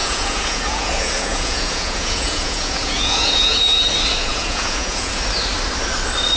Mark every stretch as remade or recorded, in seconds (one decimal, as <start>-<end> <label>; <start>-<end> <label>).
0.0-3.8 remade; 3.8-4.3 recorded; 4.3-5.1 remade; 5.1-6.4 recorded